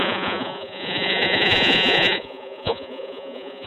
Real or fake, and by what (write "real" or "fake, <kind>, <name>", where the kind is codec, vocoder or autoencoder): fake, vocoder, Vocos